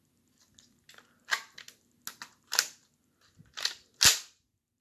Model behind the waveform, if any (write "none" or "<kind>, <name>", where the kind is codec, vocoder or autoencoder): none